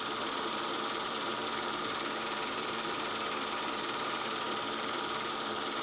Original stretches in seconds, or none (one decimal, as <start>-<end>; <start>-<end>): none